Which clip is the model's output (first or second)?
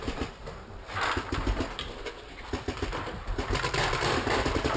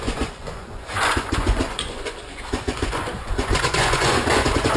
second